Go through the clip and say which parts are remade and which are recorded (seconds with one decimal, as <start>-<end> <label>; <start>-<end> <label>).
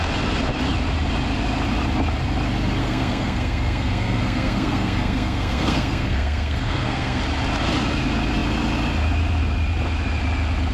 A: 0.0-2.8 recorded; 2.8-7.2 remade; 7.2-10.7 recorded